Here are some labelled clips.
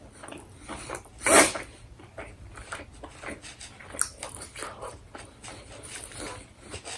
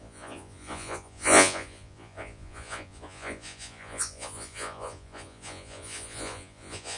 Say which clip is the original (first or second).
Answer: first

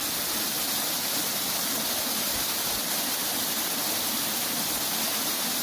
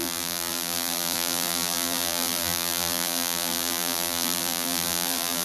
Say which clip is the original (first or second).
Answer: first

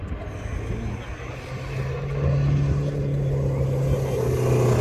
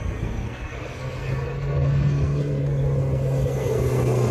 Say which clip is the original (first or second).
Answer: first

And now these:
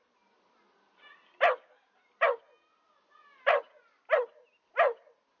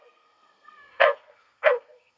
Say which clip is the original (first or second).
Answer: first